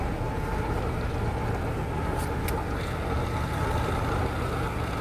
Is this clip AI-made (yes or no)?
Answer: no